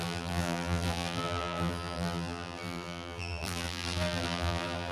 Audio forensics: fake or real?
fake